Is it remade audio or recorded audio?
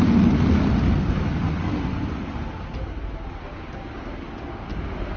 recorded